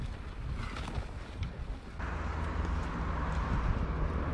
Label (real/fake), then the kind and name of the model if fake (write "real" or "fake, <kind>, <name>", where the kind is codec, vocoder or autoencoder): real